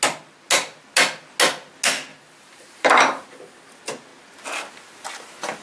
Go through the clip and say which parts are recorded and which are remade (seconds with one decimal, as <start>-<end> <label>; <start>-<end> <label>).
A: 0.0-2.1 recorded; 2.1-3.4 remade; 3.4-5.6 recorded

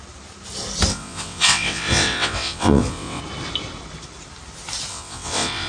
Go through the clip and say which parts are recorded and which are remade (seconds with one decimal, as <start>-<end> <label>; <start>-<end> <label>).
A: 0.0-0.9 recorded; 0.9-3.2 remade; 3.2-4.9 recorded; 4.9-5.7 remade

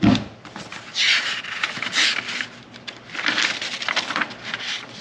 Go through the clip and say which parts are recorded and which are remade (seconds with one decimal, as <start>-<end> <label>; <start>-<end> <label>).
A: 0.0-5.0 recorded

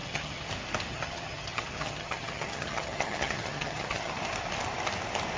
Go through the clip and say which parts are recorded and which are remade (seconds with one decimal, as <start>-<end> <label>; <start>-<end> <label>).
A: 0.0-0.5 remade; 0.5-0.9 recorded; 0.9-4.1 remade; 4.1-5.4 recorded

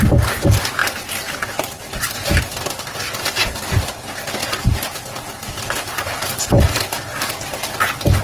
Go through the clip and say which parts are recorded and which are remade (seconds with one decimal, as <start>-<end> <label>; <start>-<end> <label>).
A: 0.0-0.8 recorded; 0.8-2.0 remade; 2.0-8.2 recorded

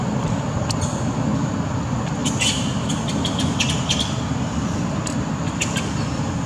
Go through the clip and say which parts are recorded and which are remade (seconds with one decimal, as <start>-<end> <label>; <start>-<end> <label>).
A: 0.0-2.2 recorded; 2.2-2.9 remade; 2.9-6.5 recorded

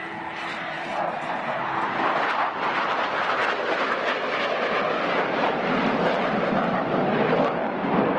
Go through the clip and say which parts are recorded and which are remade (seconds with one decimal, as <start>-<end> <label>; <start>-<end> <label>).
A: 0.0-8.2 recorded